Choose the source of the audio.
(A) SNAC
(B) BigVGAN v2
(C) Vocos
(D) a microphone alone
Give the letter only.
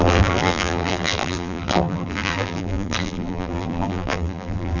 B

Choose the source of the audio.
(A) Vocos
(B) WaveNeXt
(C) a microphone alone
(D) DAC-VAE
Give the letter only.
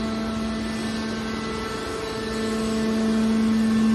C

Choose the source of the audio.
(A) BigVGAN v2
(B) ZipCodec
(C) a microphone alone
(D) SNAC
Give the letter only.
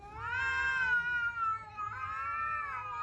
C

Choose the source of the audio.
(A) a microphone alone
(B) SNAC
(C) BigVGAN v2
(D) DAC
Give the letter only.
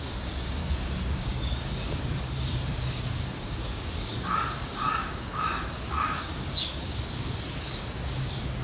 D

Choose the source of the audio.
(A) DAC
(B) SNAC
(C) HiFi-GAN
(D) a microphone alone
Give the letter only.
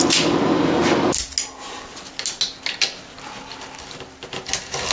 D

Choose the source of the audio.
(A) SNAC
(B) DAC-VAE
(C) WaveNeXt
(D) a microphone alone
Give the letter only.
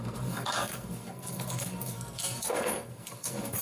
A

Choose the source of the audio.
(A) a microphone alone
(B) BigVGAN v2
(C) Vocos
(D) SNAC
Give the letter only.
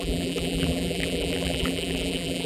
B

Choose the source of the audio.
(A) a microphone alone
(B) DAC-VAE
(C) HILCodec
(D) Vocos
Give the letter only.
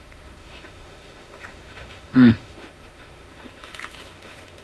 B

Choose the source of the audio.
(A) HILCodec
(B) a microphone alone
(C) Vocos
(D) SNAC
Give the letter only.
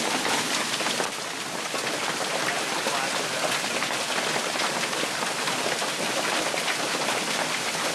B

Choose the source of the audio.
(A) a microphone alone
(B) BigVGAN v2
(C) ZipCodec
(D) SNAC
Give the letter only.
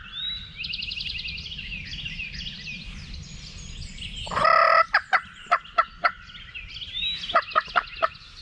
A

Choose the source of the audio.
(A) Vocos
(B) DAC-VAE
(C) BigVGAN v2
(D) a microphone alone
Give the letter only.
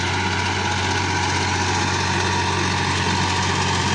D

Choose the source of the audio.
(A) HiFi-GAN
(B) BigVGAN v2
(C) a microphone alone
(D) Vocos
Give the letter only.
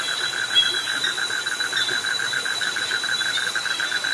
C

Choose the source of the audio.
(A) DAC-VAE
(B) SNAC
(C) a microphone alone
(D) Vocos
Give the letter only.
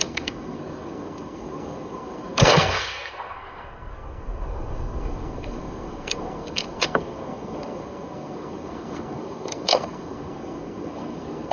B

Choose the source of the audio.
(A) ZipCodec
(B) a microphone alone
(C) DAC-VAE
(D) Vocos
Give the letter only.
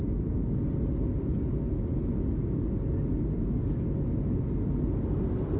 B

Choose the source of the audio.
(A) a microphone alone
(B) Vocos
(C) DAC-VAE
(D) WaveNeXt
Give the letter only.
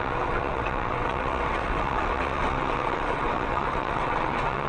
D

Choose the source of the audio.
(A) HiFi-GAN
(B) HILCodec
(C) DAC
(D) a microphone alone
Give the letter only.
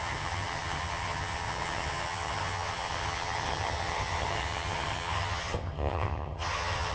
A